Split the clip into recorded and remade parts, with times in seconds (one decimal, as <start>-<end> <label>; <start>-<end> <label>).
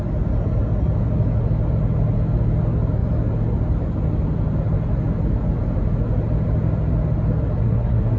0.0-7.6 recorded; 7.6-8.2 remade